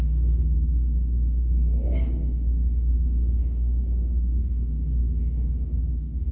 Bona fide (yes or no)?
no